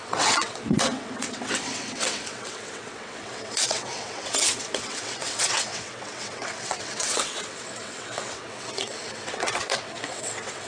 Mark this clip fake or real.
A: fake